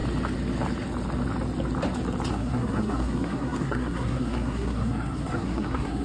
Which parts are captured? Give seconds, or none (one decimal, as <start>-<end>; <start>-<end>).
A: 0.0-2.3